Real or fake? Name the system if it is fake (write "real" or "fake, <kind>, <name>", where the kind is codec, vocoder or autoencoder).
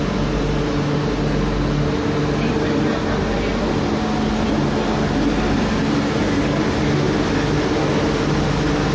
real